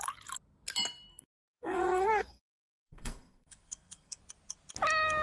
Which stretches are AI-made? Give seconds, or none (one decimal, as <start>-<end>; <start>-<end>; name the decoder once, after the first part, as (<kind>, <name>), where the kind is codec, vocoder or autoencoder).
1.1-4.2 (codec, SNAC)